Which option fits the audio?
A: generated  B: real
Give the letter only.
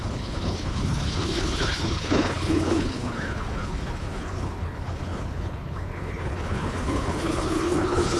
A